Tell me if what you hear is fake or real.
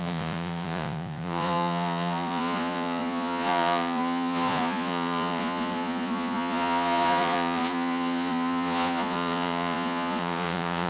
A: fake